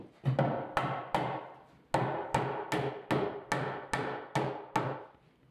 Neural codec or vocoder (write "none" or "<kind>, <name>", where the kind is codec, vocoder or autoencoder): none